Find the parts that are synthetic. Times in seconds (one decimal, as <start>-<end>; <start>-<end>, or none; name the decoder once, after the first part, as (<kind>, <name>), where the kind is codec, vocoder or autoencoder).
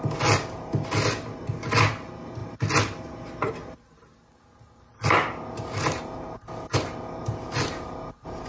none